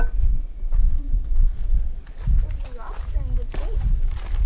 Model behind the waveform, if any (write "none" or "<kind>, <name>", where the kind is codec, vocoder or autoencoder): none